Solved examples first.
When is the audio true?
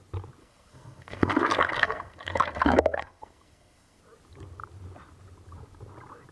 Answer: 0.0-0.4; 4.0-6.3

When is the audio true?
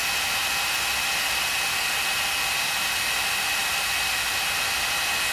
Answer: 0.0-5.3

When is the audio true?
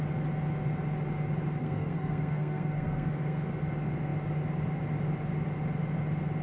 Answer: 0.0-1.6; 3.5-6.4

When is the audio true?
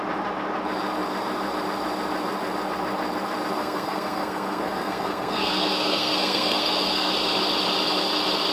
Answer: 0.0-3.6; 7.1-8.5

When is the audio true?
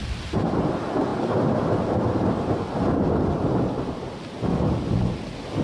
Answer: 0.0-5.6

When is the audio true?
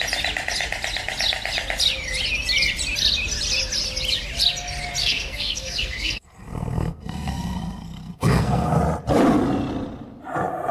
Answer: 0.0-5.0; 8.8-10.7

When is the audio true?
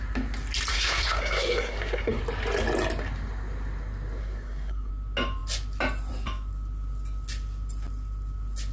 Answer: 0.0-0.7; 2.2-4.2; 4.9-8.7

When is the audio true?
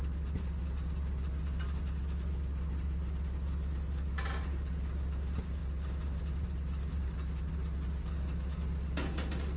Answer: 0.0-9.6